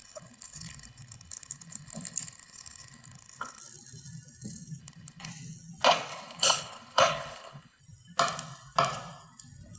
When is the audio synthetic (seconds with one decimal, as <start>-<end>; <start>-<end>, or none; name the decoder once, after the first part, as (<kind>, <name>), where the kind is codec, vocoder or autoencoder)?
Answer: 0.0-3.6 (codec, HILCodec); 4.8-5.3; 6.1-7.8